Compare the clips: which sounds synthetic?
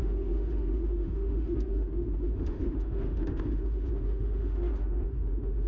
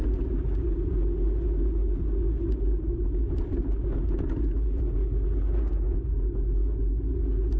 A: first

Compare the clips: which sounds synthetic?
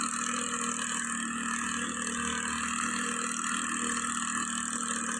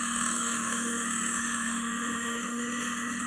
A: second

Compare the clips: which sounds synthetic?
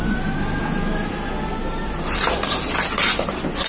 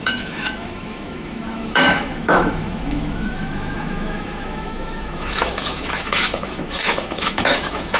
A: second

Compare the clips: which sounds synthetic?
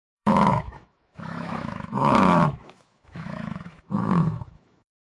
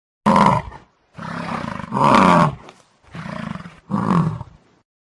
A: first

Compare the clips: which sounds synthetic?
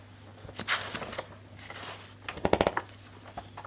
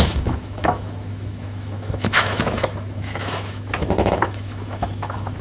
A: second